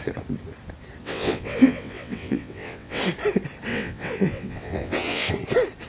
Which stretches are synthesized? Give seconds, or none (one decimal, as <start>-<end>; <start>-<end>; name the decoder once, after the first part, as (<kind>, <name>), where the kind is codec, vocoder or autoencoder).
1.0-3.0 (vocoder, WaveNeXt); 3.7-5.3